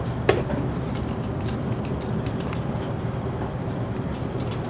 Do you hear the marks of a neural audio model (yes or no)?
yes